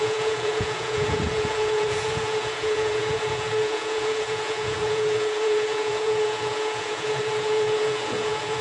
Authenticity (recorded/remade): remade